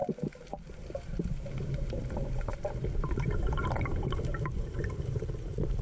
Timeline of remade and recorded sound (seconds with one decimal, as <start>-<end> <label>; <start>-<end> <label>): 0.0-0.7 recorded; 0.7-5.8 remade